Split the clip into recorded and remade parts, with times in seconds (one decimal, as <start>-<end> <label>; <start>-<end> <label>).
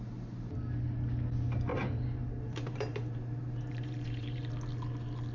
0.0-1.7 recorded; 1.7-4.5 remade; 4.5-5.3 recorded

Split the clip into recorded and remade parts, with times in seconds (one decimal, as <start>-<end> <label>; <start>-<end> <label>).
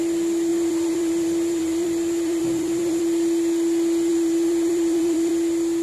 0.0-0.5 recorded; 0.5-3.0 remade; 3.0-4.1 recorded; 4.1-5.3 remade; 5.3-5.8 recorded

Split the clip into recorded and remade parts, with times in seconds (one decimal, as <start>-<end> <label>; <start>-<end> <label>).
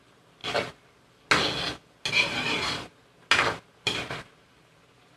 0.0-0.4 remade; 0.4-2.1 recorded; 2.1-3.0 remade; 3.0-3.6 recorded; 3.6-5.2 remade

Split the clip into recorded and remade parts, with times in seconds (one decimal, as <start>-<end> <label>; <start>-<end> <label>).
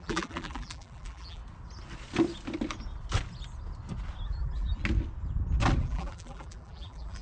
0.0-1.4 remade; 1.4-4.3 recorded; 4.3-4.8 remade; 4.8-5.8 recorded; 5.8-7.2 remade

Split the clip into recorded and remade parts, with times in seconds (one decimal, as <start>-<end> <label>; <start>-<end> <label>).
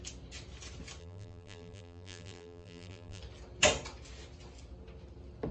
0.0-1.0 recorded; 1.0-3.2 remade; 3.2-5.5 recorded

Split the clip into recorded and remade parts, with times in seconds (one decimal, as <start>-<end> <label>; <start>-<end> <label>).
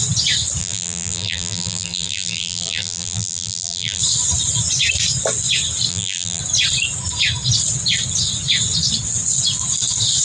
0.0-0.6 recorded; 0.6-4.0 remade; 4.0-5.9 recorded; 5.9-6.4 remade; 6.4-10.2 recorded